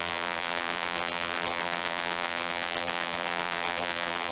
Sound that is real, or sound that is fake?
fake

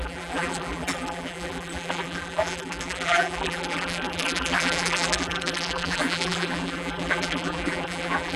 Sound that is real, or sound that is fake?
fake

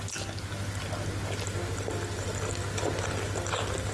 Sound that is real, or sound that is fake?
real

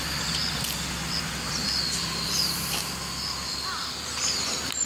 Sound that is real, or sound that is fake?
real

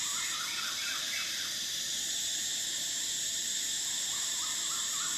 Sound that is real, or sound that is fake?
fake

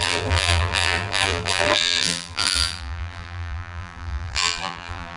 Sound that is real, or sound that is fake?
fake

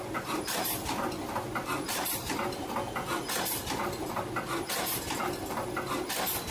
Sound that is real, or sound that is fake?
real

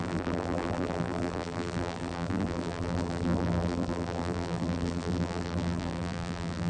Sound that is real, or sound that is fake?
fake